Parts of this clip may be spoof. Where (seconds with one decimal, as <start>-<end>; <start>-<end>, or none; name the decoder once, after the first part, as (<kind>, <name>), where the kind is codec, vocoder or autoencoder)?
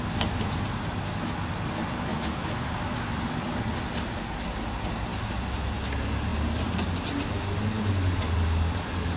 2.1-2.7 (autoencoder, DAC-VAE)